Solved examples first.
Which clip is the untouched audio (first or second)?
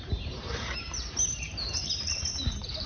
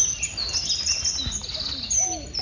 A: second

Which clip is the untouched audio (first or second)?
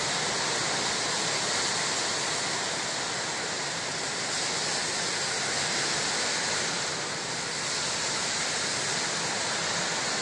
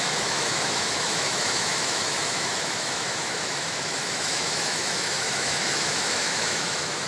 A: first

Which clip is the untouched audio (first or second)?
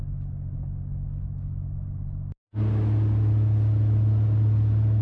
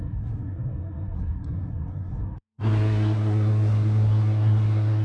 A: first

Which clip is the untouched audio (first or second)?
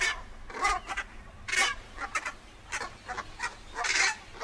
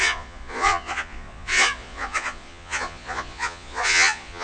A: first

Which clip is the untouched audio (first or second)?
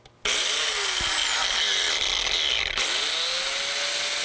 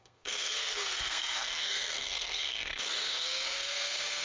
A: first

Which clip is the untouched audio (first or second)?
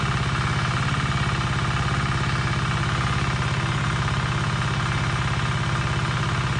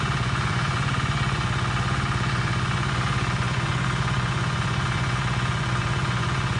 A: first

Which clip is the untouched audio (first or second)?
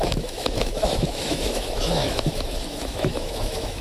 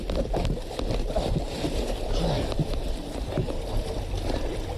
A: second